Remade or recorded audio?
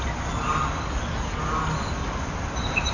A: recorded